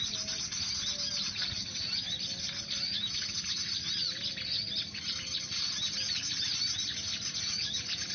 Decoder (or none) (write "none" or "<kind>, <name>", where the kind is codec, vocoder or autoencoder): none